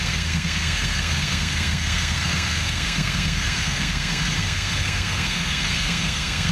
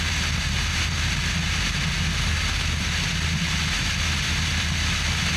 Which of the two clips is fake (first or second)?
first